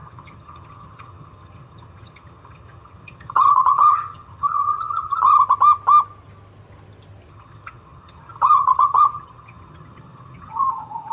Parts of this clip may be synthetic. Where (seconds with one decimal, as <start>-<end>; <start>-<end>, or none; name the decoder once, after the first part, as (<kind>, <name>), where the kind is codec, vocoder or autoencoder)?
0.0-5.3 (vocoder, HiFi-GAN); 7.3-11.1